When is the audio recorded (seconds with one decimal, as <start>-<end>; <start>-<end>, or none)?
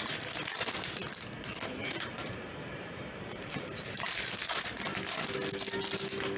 0.0-1.8; 4.7-6.4